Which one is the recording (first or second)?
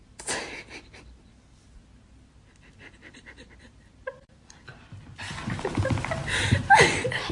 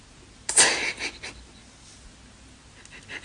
second